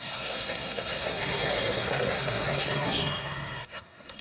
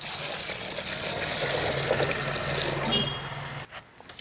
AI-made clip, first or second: first